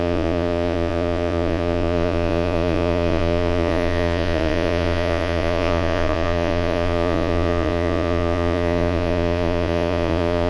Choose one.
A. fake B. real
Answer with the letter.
A